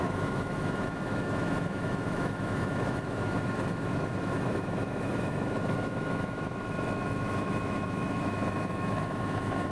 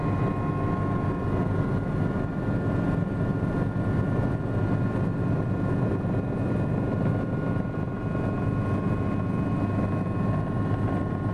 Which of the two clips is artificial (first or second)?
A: first